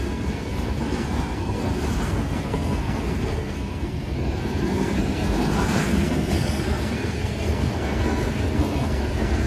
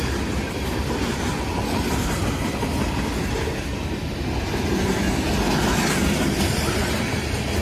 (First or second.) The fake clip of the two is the first